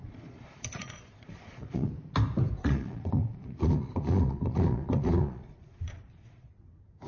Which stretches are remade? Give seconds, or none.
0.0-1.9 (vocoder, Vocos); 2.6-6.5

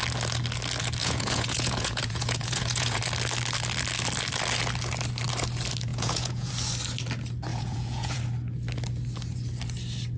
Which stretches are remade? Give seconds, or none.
1.0-3.0 (vocoder, Vocos); 5.9-6.5; 7.5-8.2

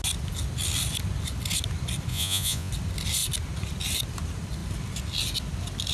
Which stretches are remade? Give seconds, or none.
2.1-2.7 (vocoder, Vocos)

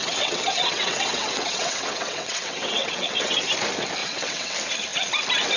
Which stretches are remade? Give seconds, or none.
0.0-3.4 (vocoder, WaveNeXt); 4.0-4.5

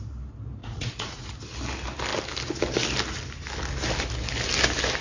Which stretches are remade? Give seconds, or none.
0.6-1.3 (vocoder, Vocos)

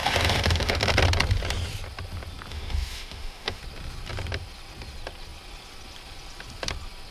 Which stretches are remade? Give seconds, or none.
0.0-0.8 (autoencoder, DAC-VAE); 2.5-3.6

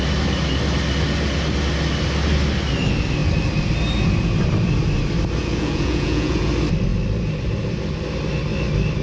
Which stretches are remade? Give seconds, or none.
5.4-6.5 (vocoder, Vocos)

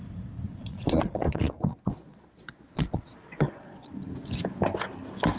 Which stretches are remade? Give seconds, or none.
0.7-3.9 (vocoder, Vocos)